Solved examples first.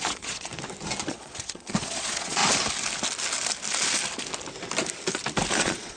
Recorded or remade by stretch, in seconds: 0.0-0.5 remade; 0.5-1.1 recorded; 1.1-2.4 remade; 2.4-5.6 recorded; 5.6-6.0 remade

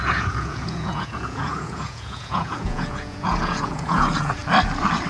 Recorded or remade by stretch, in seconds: 0.0-4.4 remade; 4.4-5.1 recorded

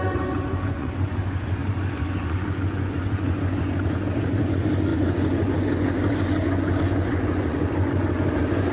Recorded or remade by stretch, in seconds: 0.0-8.7 remade

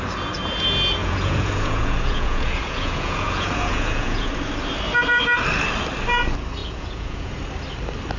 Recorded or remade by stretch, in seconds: 0.0-1.0 recorded; 1.0-4.3 remade; 4.3-6.6 recorded; 6.6-7.3 remade; 7.3-8.2 recorded

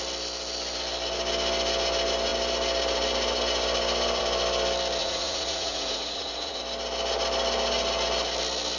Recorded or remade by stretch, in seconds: 0.0-5.0 recorded; 5.0-6.6 remade; 6.6-8.8 recorded

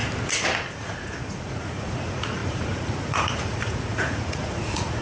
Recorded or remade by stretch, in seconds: 0.0-0.7 recorded; 0.7-5.0 remade